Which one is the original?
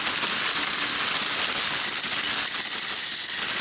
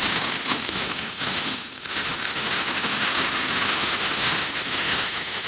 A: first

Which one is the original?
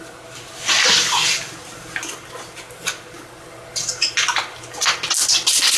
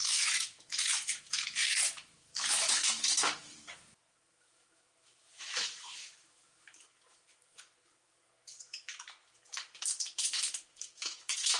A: first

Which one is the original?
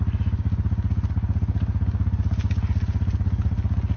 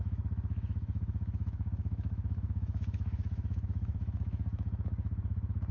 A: first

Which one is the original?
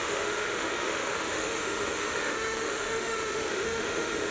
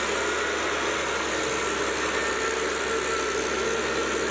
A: second